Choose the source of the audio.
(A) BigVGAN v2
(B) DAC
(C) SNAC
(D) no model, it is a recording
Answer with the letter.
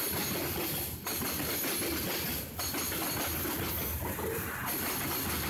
D